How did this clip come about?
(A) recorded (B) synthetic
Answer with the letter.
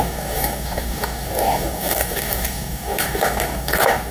B